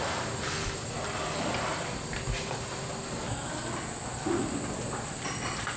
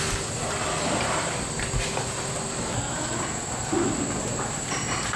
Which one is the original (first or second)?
first